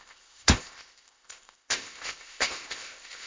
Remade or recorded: remade